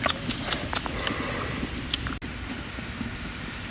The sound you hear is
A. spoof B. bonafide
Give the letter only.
B